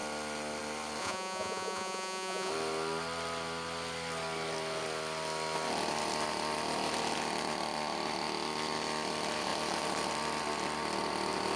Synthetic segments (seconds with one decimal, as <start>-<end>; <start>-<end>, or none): 1.0-2.5